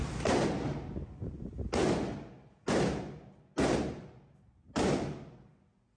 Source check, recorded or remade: recorded